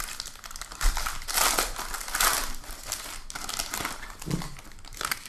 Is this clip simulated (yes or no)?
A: no